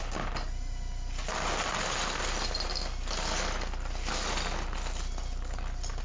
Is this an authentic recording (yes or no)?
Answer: yes